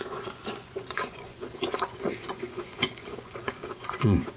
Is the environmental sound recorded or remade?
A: remade